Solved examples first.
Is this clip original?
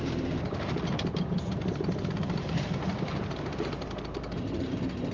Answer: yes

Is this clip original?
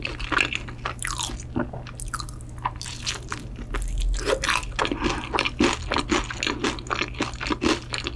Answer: yes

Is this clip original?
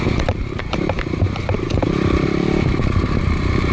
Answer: no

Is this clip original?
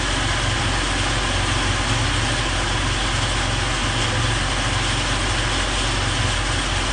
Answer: yes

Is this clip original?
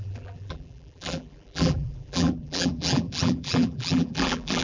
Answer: no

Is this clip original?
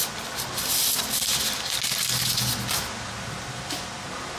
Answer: yes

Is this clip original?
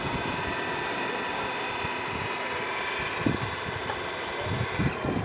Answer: no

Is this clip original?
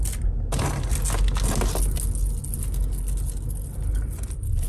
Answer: yes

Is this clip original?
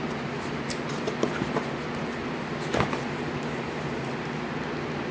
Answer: yes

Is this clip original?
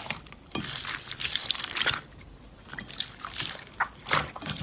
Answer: no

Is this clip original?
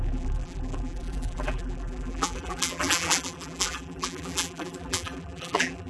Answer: no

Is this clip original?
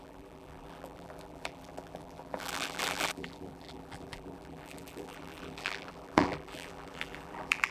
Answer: no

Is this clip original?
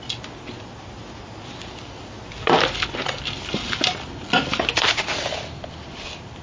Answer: yes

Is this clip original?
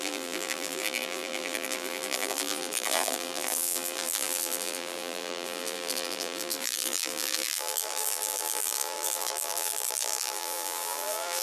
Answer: no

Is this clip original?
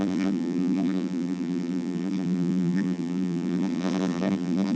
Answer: no